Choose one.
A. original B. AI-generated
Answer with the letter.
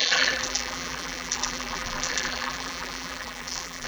B